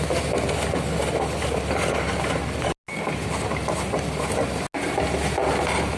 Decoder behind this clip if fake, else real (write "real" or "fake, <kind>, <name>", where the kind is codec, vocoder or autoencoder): real